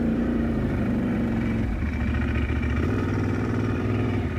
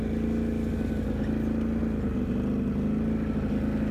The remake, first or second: first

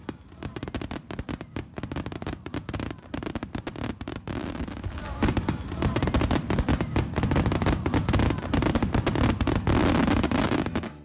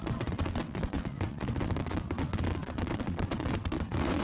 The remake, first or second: second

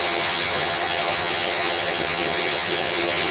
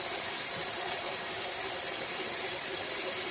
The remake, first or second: first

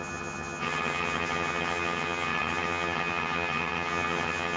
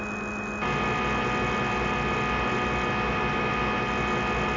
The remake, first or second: first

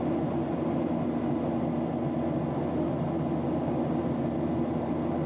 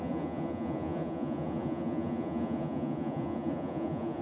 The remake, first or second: second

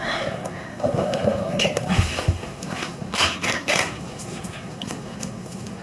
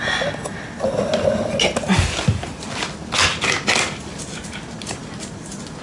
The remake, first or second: first